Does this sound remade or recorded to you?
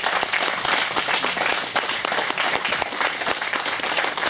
recorded